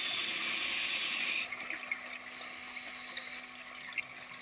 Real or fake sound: real